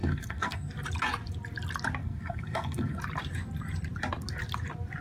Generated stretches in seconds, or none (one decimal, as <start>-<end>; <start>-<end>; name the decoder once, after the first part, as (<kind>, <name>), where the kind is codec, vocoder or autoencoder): 0.0-0.7 (codec, SNAC); 2.0-3.0